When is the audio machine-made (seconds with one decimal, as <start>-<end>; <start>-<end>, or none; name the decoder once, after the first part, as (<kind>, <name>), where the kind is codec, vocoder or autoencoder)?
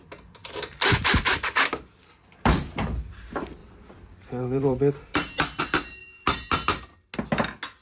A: 0.4-2.8 (vocoder, BigVGAN v2); 3.6-5.6; 6.0-6.9